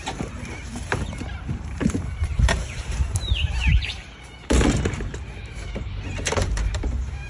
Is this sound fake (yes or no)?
yes